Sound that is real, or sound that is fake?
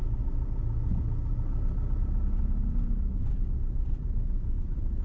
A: real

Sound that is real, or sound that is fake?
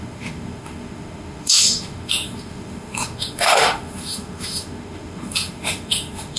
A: fake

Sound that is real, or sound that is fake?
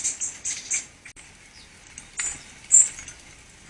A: real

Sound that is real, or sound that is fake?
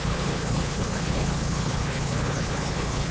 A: fake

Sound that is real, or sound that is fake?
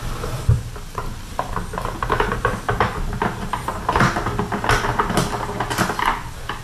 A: real